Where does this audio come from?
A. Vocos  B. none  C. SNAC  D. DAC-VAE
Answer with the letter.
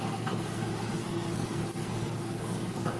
C